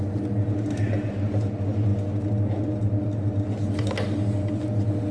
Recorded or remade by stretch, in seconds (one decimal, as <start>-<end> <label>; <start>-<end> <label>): 0.0-5.1 recorded